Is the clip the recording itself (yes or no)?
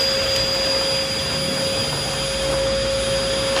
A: yes